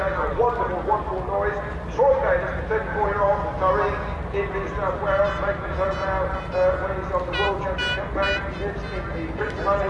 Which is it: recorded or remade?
recorded